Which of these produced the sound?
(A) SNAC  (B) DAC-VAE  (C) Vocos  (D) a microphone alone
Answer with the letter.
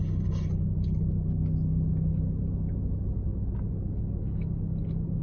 D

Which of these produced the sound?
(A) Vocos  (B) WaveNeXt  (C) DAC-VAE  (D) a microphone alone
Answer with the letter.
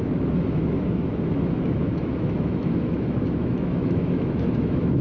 C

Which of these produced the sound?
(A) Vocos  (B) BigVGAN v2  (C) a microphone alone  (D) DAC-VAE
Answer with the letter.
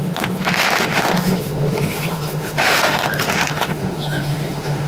D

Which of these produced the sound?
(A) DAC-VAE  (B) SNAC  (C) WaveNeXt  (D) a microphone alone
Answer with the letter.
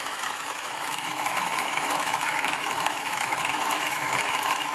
A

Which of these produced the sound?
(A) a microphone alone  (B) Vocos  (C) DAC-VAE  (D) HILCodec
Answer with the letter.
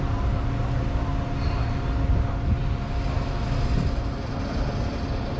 A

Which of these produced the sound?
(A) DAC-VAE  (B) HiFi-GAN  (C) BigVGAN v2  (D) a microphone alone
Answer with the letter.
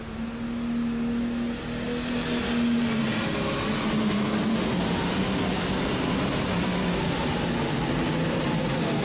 D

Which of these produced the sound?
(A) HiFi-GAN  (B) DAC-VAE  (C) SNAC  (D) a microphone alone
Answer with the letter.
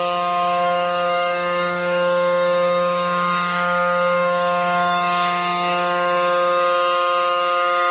B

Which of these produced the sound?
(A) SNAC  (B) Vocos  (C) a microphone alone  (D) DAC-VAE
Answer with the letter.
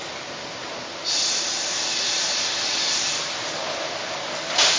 C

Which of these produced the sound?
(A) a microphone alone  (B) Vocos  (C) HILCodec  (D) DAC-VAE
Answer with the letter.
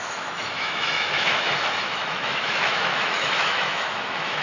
D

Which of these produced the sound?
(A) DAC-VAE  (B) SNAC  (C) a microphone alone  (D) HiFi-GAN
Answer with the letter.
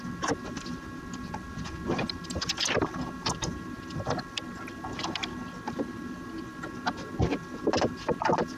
C